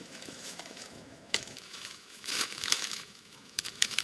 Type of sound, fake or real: fake